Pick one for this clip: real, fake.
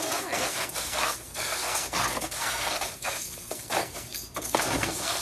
fake